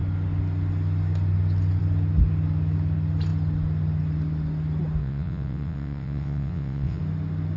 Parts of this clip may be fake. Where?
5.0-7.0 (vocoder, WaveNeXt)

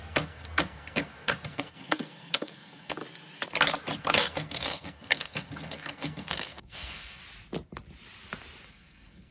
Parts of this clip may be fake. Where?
0.0-3.0 (codec, SNAC); 4.0-7.2; 8.7-9.3

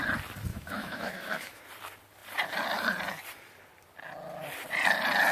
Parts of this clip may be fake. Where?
0.5-1.6 (autoencoder, DAC-VAE)

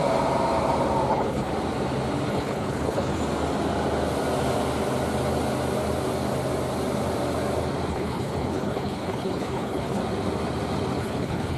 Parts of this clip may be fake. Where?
1.1-1.5 (codec, HILCodec); 2.3-3.2; 7.9-10.0; 11.0-11.6

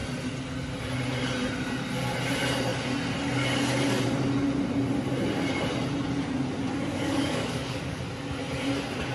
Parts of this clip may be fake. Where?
6.9-8.0 (codec, DAC)

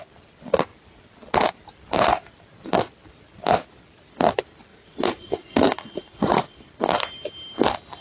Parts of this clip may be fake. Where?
4.7-6.6 (vocoder, Vocos)

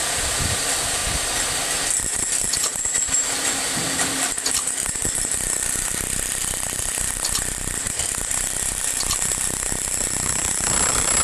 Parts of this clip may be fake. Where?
0.0-1.0 (vocoder, BigVGAN v2); 2.0-11.2

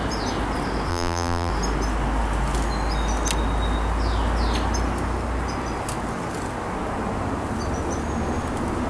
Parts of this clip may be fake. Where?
0.9-1.5 (vocoder, BigVGAN v2)